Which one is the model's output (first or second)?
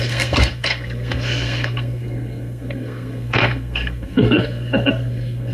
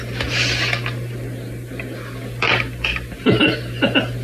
first